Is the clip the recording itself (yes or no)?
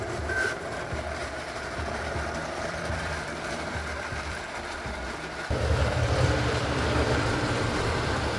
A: no